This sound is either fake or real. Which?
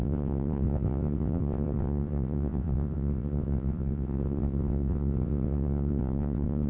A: fake